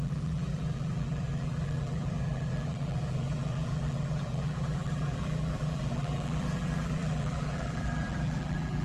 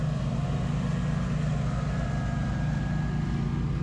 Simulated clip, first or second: first